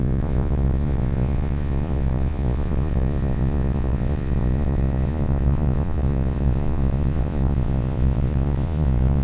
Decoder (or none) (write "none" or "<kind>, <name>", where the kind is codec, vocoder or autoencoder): vocoder, Vocos